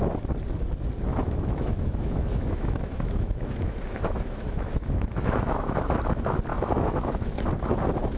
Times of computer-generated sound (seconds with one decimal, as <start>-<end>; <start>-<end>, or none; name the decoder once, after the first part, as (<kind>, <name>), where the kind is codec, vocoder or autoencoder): 1.1-5.8 (autoencoder, DAC-VAE); 6.5-7.5